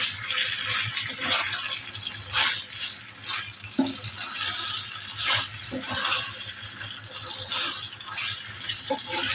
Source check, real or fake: real